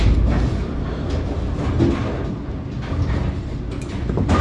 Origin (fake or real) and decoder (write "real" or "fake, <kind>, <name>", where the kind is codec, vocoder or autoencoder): real